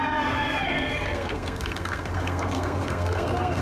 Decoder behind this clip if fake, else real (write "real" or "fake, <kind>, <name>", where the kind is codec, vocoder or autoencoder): fake, codec, SNAC